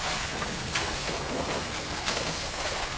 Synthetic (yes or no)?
yes